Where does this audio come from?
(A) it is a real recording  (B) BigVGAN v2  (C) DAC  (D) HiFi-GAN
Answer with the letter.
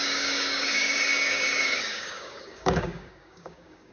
C